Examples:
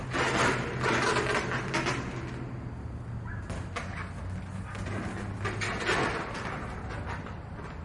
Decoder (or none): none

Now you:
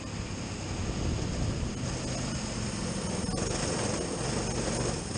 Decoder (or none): none